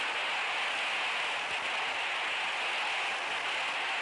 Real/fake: real